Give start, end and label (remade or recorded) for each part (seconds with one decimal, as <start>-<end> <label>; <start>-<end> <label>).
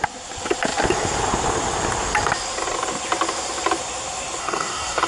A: 0.0-4.4 recorded; 4.4-5.1 remade